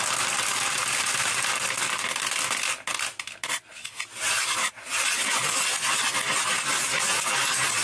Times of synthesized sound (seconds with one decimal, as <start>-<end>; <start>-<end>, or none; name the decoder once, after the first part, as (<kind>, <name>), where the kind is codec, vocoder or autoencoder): 0.5-1.7 (vocoder, BigVGAN v2)